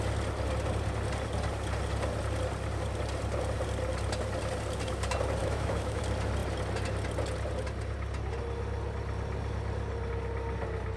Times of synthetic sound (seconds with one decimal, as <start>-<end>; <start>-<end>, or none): 5.4-6.0

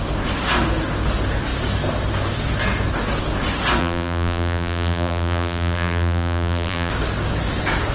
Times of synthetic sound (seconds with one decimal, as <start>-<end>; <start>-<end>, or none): 3.8-6.9

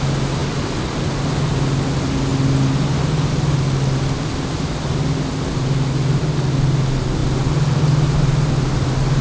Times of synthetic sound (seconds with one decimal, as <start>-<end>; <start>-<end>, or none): none

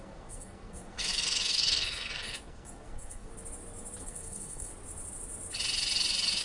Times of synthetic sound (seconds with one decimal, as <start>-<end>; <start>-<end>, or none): 0.0-3.3; 4.0-4.7

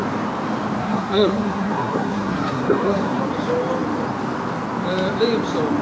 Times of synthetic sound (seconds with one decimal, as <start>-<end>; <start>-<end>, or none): 0.8-3.2

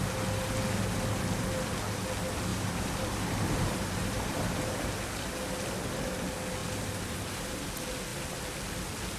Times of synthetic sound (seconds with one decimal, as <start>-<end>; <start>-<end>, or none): 2.5-4.9; 6.6-7.7

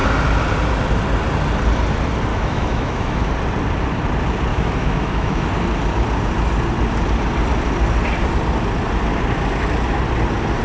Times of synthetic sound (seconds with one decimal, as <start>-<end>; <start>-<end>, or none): 2.3-3.3; 4.5-5.5